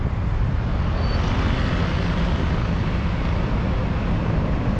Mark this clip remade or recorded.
recorded